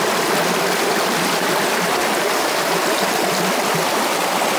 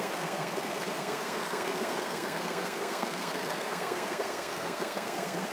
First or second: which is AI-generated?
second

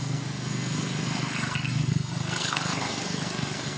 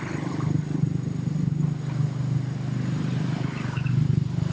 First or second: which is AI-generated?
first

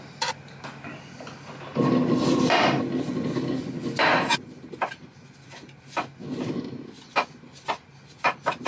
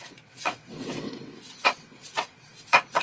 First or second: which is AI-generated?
second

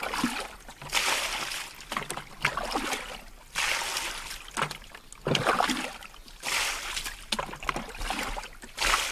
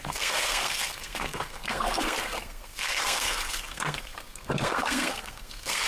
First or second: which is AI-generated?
second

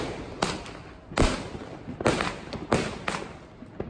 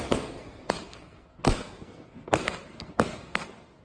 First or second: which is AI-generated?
second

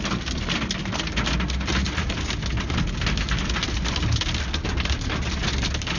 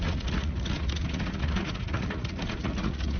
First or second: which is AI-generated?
second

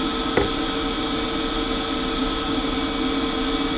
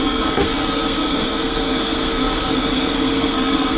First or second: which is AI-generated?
second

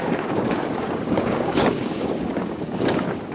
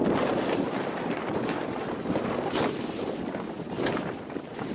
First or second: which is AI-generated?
first